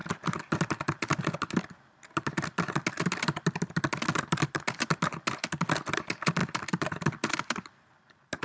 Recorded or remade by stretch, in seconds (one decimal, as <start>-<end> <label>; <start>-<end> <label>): 0.0-8.4 recorded